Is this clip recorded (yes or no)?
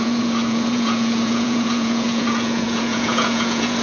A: no